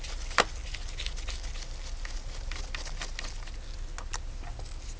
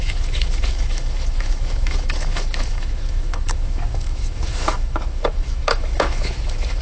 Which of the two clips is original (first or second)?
first